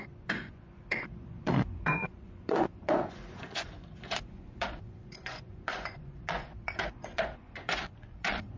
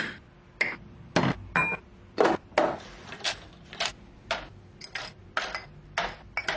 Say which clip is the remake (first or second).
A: first